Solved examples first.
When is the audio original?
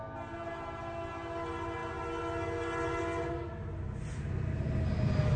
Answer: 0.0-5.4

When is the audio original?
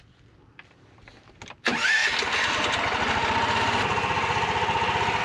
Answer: 0.0-5.2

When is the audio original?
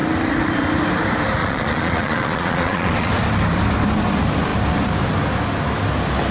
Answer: 0.0-1.4; 3.1-6.3